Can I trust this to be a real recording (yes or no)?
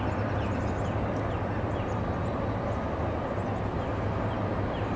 yes